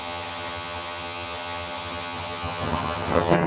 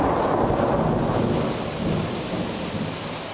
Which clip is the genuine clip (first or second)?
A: second